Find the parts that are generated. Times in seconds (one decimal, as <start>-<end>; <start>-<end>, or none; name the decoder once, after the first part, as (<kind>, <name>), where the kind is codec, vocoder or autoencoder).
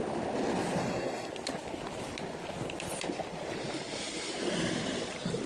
0.8-1.3 (codec, SNAC)